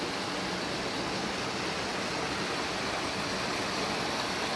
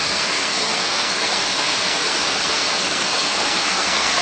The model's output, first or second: second